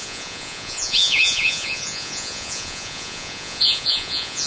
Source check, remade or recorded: remade